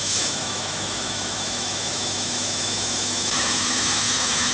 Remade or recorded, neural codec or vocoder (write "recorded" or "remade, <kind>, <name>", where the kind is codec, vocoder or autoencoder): remade, autoencoder, DAC-VAE